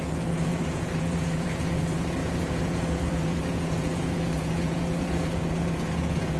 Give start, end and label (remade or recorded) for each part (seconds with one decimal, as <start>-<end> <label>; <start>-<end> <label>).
0.0-6.4 remade